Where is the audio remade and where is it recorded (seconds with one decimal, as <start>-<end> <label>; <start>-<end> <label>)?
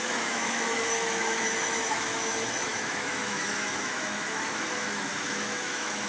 0.0-6.1 remade